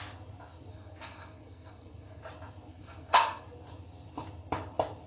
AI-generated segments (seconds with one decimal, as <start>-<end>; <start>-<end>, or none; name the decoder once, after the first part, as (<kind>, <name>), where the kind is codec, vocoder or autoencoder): 0.7-2.2 (codec, SNAC); 2.7-3.4